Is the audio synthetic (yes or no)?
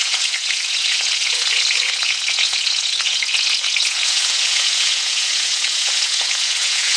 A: yes